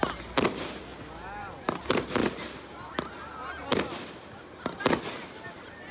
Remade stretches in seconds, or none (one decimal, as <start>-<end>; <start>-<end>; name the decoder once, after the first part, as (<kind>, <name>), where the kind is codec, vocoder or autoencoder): none